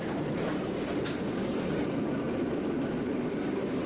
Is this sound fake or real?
real